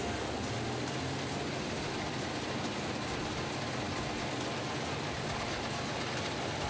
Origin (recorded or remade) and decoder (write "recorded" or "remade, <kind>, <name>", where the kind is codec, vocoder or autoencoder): recorded